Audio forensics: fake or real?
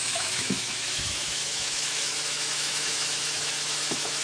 fake